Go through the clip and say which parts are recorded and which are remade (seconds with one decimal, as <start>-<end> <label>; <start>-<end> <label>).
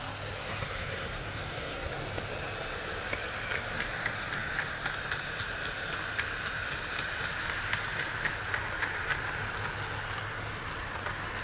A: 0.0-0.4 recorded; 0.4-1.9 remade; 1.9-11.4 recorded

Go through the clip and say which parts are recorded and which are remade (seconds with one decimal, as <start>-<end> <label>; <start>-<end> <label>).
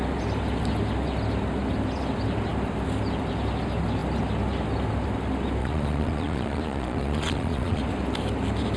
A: 0.0-5.6 recorded; 5.6-7.8 remade; 7.8-8.8 recorded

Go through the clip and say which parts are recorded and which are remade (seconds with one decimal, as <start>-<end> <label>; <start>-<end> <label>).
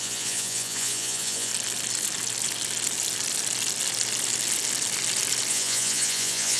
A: 0.0-1.5 remade; 1.5-5.5 recorded; 5.5-6.6 remade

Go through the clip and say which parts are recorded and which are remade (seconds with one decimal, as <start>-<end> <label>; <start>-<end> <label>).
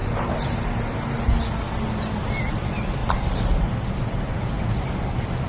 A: 0.0-5.5 recorded